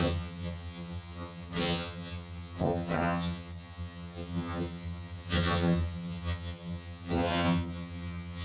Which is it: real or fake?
fake